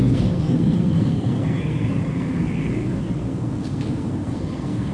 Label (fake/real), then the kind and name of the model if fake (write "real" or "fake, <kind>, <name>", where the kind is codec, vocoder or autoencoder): fake, codec, SNAC